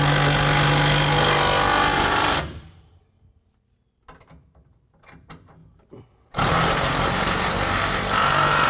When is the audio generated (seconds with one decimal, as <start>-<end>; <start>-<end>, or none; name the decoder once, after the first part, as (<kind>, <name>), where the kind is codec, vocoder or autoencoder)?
1.9-3.0 (vocoder, BigVGAN v2); 5.6-8.7